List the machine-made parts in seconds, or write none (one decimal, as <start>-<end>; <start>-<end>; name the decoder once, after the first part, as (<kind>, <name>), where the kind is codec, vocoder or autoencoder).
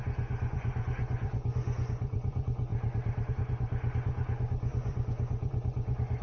0.0-2.7 (vocoder, Vocos); 3.3-6.2